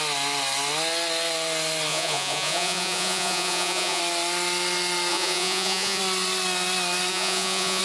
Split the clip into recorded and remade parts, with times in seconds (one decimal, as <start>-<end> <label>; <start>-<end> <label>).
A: 0.0-1.9 recorded; 1.9-4.0 remade; 4.0-5.1 recorded; 5.1-6.0 remade; 6.0-7.1 recorded; 7.1-7.8 remade